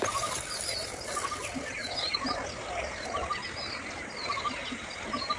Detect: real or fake real